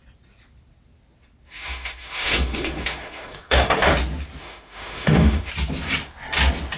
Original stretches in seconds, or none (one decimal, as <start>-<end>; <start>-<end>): 0.0-1.5; 3.9-4.4; 5.5-6.8